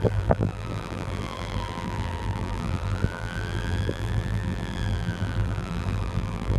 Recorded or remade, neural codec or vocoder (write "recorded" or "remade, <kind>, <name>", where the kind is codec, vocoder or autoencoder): remade, vocoder, BigVGAN v2